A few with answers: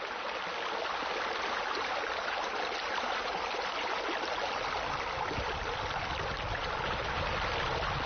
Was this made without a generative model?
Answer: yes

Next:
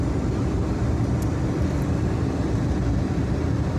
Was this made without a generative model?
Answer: yes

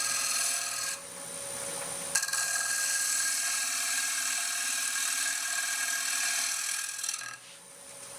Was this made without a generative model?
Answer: yes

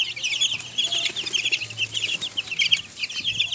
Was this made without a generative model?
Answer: yes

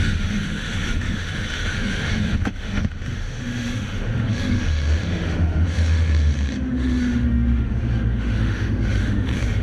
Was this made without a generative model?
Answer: no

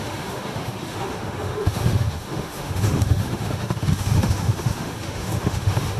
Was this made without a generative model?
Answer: no